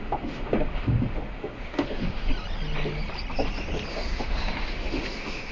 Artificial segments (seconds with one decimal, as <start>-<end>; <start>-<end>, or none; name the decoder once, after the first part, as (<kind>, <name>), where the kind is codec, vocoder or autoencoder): 0.0-2.3 (autoencoder, DAC-VAE); 3.9-5.5